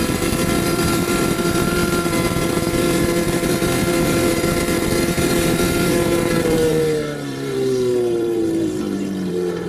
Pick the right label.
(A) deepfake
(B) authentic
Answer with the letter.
A